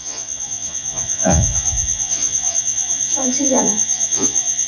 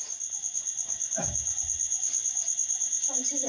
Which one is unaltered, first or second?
second